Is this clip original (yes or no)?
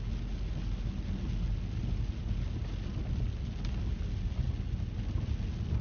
yes